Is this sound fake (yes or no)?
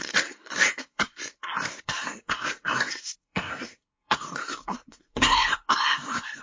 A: yes